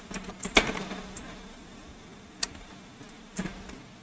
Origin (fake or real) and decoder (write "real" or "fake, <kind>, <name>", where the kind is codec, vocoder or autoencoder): real